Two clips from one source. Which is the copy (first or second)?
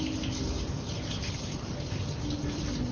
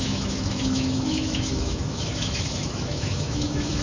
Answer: second